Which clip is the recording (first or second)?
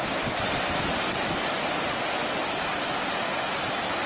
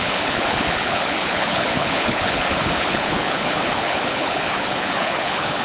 first